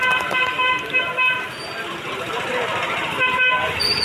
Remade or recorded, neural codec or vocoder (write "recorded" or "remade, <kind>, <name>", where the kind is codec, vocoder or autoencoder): recorded